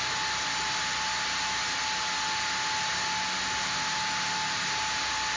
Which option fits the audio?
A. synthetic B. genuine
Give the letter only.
B